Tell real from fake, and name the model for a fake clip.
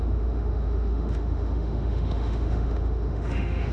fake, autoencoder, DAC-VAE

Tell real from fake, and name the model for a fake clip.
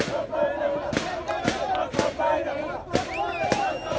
real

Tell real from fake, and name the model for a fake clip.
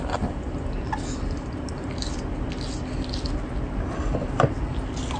real